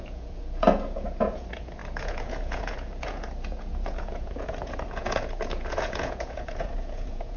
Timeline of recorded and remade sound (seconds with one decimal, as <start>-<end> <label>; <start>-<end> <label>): 0.0-7.4 remade